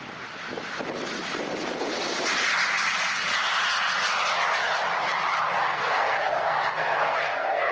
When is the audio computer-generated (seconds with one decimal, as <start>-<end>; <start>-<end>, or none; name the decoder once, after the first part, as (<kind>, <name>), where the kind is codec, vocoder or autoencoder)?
5.6-7.7 (codec, SNAC)